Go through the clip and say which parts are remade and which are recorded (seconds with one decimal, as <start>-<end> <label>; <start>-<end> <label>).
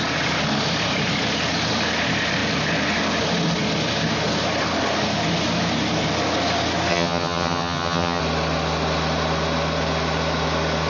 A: 0.0-6.9 recorded; 6.9-8.2 remade; 8.2-10.9 recorded